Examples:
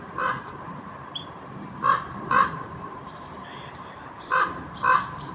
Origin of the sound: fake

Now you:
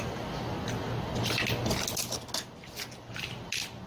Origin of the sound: real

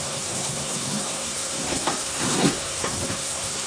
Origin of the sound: fake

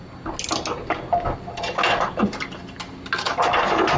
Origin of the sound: real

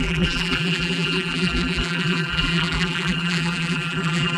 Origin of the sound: fake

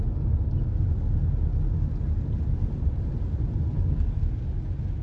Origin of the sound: real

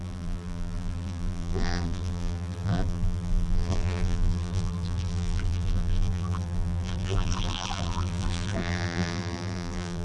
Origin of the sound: fake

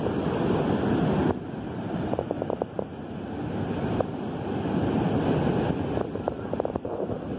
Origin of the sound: real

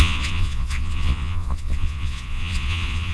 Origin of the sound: fake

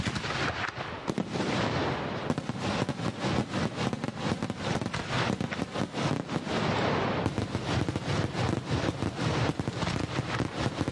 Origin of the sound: real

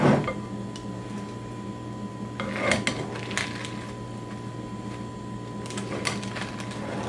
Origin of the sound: real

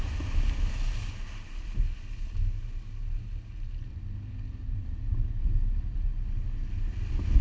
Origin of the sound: real